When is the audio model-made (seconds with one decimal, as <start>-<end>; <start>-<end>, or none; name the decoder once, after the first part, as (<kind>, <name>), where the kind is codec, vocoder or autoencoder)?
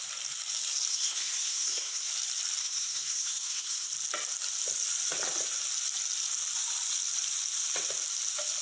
0.9-2.1 (codec, SNAC); 2.6-3.9